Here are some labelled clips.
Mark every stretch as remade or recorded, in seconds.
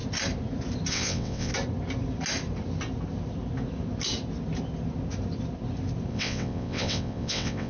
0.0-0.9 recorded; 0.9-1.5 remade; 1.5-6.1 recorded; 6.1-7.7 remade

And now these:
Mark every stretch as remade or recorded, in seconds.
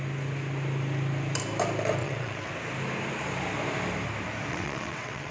0.0-2.0 recorded; 2.0-2.5 remade; 2.5-4.5 recorded; 4.5-5.3 remade